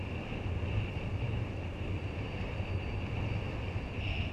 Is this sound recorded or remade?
recorded